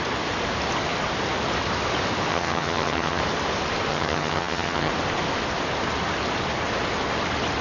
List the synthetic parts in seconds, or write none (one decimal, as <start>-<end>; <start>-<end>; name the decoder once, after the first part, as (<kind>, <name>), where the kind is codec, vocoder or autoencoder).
2.3-3.2 (vocoder, HiFi-GAN); 3.9-4.9